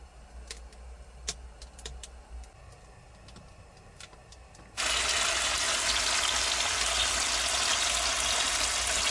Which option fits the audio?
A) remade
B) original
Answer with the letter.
B